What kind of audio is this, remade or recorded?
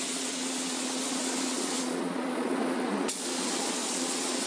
remade